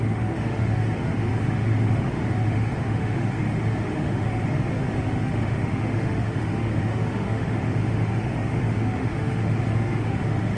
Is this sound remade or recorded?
remade